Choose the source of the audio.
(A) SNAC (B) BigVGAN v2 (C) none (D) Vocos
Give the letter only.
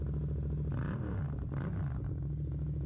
C